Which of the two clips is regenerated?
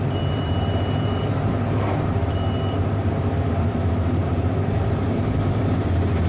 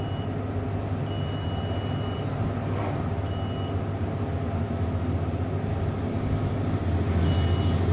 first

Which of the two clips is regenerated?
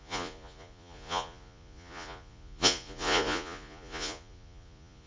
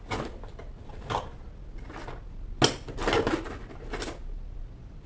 first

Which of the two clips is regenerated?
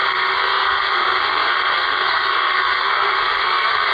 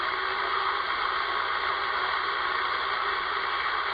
first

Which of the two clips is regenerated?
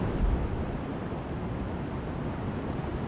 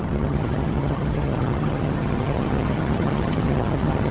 second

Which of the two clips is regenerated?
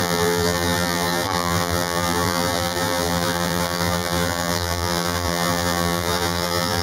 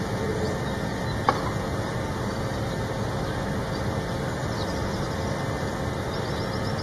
first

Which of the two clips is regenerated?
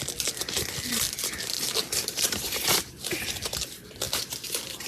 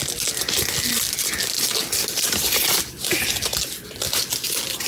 first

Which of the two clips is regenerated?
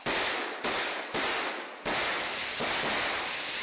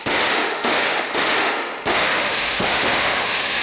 second